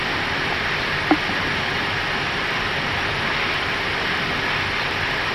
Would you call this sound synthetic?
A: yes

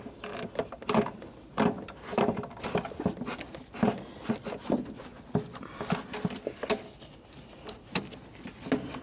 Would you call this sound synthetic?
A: no